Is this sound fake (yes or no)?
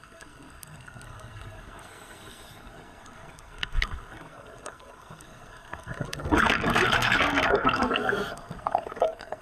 yes